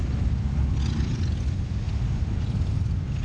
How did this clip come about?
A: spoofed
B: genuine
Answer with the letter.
B